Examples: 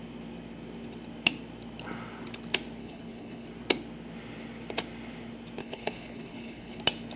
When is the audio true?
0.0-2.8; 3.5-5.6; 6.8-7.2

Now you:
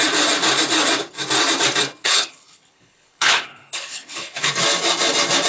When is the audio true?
0.0-2.0; 4.5-5.5

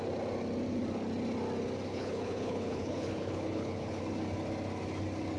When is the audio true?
0.0-1.9; 4.0-5.4

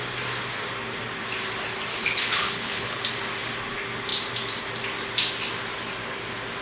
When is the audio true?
0.0-1.9; 3.0-6.6

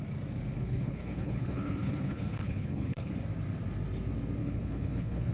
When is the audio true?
0.0-0.5; 3.1-4.4

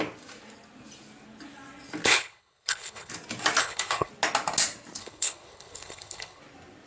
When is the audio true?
0.0-2.1; 3.1-3.6; 4.1-5.0; 6.4-6.9

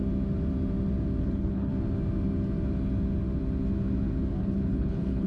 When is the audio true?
0.0-1.2; 1.7-4.4

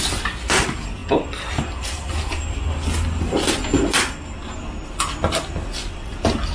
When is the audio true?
0.0-6.5